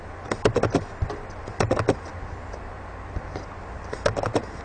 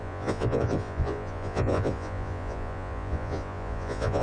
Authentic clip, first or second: first